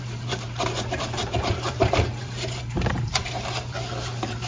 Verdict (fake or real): fake